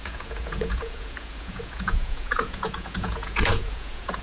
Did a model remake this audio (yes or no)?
yes